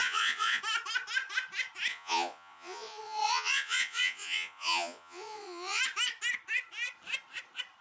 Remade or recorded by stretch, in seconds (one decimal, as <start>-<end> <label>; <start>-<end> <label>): 0.0-0.6 remade; 0.6-1.9 recorded; 1.9-5.8 remade; 5.8-7.8 recorded